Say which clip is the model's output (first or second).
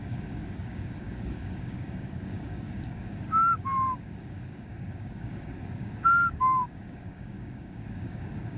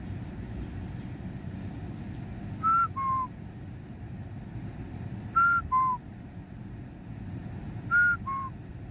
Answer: first